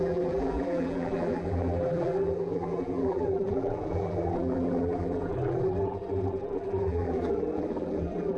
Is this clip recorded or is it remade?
remade